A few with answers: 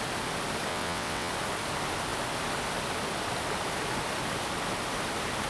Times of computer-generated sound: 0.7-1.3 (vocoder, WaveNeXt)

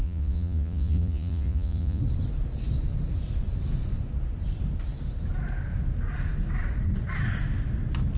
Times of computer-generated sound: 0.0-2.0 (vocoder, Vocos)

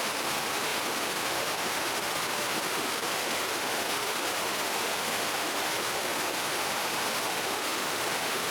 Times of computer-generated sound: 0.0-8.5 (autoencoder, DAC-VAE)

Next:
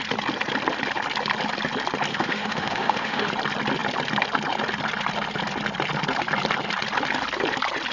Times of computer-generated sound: 2.1-3.3 (autoencoder, DAC-VAE)